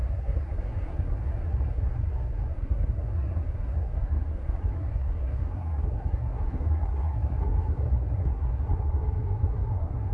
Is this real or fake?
fake